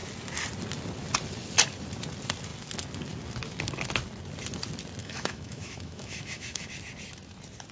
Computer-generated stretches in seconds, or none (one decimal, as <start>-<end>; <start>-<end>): 5.0-6.7